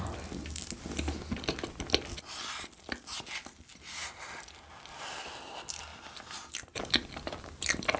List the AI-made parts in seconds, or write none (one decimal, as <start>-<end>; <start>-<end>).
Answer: none